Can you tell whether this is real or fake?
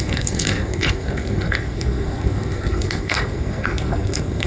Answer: fake